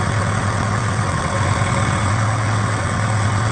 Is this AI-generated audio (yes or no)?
yes